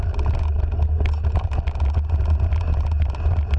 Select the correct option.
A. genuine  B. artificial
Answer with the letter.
A